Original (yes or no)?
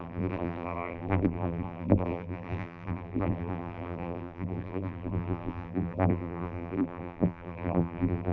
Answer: no